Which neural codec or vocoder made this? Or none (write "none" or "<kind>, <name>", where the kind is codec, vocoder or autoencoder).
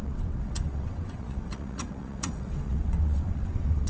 vocoder, WaveNeXt